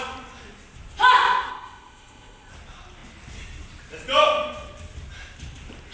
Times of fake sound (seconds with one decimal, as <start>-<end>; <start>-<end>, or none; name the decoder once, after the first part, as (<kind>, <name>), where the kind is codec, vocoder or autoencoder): 1.5-2.5 (codec, ZipCodec)